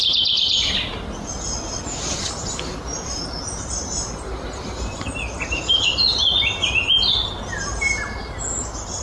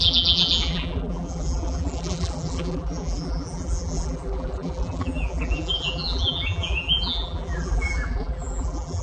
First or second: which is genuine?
first